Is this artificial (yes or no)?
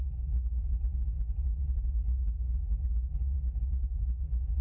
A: no